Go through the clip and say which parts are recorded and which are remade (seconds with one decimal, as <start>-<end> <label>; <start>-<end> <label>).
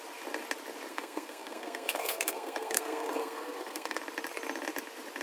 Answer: 0.0-0.9 recorded; 0.9-4.0 remade; 4.0-5.2 recorded